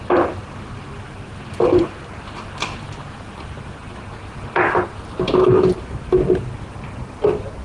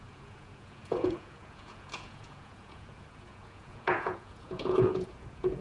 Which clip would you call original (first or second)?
first